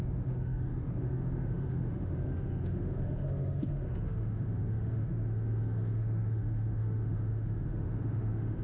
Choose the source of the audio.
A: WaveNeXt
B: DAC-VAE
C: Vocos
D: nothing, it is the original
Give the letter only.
B